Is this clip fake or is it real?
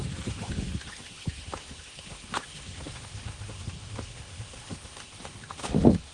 fake